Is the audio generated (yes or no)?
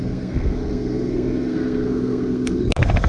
yes